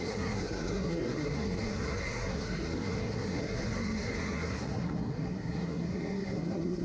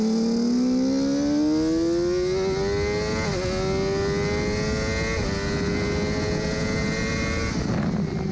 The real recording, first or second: second